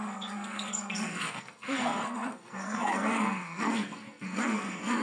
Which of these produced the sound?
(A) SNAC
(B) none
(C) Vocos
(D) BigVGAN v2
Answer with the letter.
A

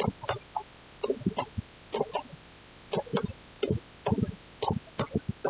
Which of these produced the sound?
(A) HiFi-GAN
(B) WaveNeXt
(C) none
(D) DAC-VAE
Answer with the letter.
C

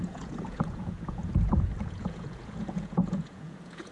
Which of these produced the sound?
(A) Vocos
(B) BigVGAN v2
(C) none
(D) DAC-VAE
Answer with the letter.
A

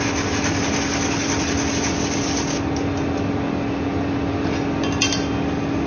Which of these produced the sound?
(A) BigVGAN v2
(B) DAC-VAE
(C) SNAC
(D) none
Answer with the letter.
D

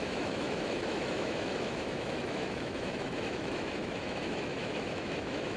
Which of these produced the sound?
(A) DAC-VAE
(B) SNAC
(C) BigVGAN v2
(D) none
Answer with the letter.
A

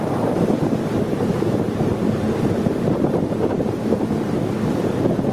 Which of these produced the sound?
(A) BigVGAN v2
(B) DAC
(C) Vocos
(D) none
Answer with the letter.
A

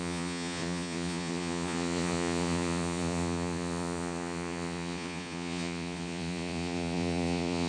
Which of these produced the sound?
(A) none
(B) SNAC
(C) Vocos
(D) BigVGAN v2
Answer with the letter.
C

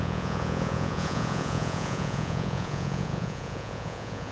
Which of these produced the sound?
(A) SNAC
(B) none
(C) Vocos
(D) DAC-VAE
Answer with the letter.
C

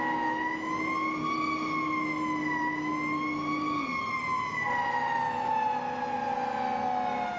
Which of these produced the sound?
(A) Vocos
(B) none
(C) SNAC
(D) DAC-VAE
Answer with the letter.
B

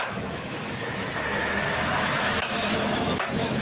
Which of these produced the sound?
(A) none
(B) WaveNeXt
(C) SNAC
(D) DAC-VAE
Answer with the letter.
D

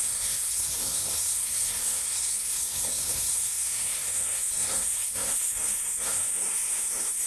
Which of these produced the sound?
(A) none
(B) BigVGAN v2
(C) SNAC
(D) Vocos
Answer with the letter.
C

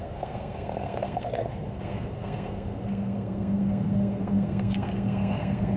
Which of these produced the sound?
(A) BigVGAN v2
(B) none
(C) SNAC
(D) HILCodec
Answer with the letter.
C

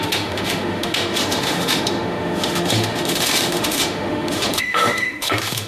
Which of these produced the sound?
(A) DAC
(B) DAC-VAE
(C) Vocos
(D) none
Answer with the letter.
B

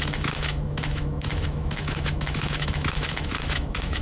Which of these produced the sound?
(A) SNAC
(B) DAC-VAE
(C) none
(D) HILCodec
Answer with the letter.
B